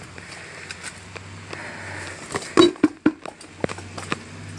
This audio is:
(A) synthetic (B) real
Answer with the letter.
B